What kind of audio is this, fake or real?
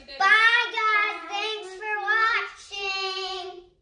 real